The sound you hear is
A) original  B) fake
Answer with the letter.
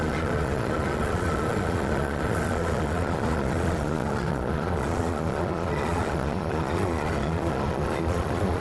B